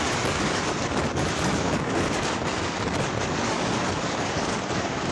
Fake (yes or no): yes